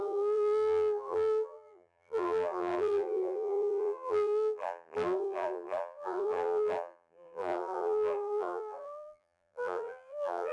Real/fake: fake